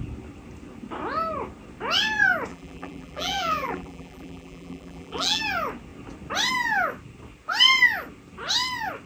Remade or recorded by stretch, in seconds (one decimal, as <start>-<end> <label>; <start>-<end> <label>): 0.0-2.5 recorded; 2.5-5.4 remade; 5.4-9.1 recorded